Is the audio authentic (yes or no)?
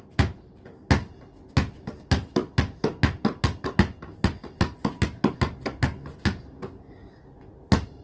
yes